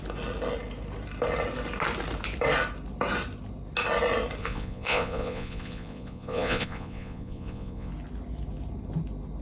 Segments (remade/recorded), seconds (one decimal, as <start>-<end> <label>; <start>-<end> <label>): 0.0-4.4 recorded; 4.4-7.9 remade; 7.9-9.4 recorded